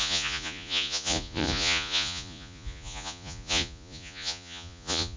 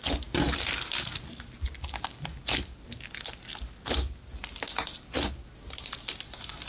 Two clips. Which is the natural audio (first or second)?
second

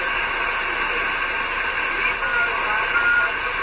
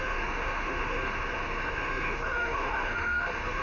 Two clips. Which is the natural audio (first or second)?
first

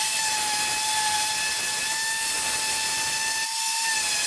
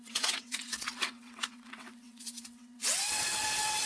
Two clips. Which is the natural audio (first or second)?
first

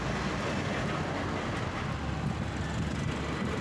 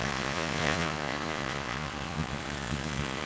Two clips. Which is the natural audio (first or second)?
first